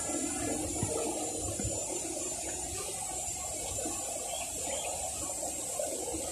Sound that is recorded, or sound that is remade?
recorded